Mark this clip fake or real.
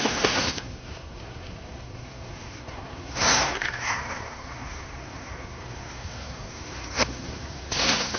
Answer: fake